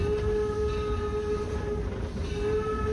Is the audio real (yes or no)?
yes